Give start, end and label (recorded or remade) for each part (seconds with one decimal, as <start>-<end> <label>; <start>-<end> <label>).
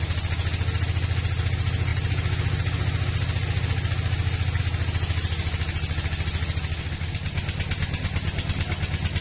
0.0-9.2 recorded